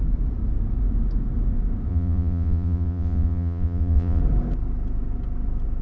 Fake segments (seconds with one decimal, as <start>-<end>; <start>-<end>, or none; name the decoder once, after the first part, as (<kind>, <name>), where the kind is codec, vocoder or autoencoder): 1.9-4.2 (vocoder, Vocos)